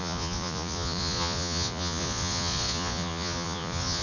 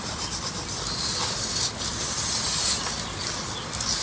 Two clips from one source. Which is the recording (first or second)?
second